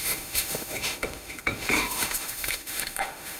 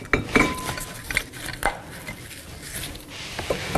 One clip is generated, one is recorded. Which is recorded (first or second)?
second